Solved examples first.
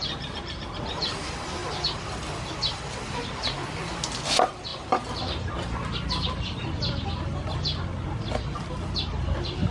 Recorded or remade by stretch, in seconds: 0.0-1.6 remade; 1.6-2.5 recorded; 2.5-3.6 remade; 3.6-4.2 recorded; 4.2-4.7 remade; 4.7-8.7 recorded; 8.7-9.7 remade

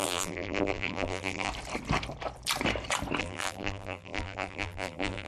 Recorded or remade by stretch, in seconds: 0.0-1.5 remade; 1.5-3.2 recorded; 3.2-5.3 remade

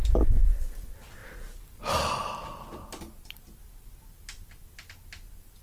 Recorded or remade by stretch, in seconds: 0.0-5.6 recorded

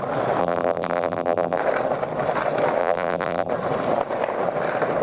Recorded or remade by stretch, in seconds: 0.0-0.4 recorded; 0.4-1.6 remade; 1.6-2.8 recorded; 2.8-3.5 remade; 3.5-5.0 recorded

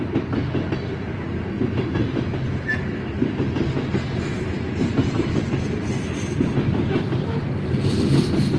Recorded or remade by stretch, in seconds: 0.0-8.6 recorded

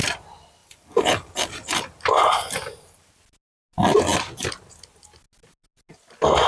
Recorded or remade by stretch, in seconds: 0.0-0.6 recorded; 0.6-3.1 remade; 3.1-6.5 recorded

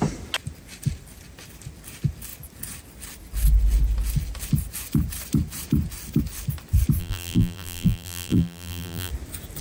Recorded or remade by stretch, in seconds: 0.0-7.0 recorded; 7.0-9.1 remade; 9.1-9.6 recorded

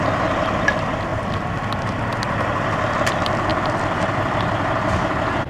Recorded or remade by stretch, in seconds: 0.0-1.1 recorded; 1.1-3.1 remade; 3.1-3.5 recorded; 3.5-4.6 remade; 4.6-5.5 recorded